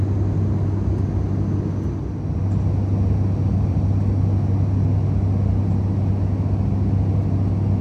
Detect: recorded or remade recorded